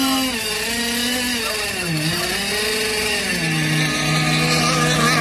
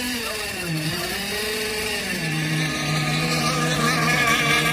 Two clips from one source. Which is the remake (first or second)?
second